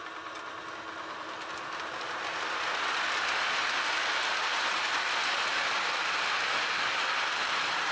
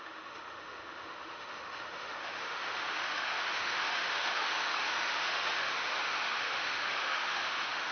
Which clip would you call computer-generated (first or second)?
second